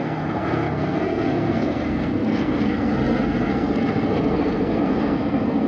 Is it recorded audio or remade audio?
remade